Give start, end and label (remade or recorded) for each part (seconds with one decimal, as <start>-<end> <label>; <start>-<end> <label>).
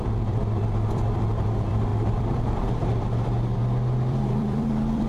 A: 0.0-5.1 remade